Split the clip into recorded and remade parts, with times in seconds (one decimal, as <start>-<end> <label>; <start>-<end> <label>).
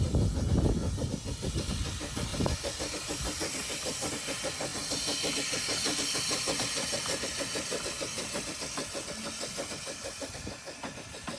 0.0-2.3 recorded; 2.3-4.1 remade; 4.1-4.7 recorded; 4.7-8.6 remade; 8.6-11.4 recorded